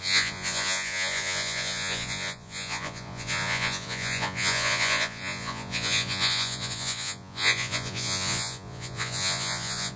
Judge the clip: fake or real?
fake